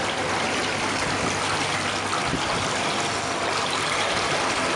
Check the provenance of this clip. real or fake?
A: real